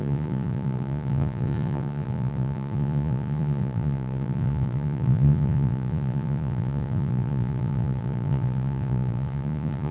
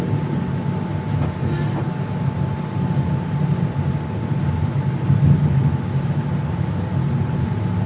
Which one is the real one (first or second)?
second